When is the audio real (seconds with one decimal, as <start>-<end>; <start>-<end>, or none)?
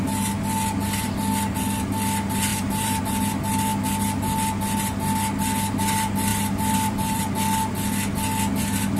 0.0-2.5; 3.0-6.3; 7.2-9.0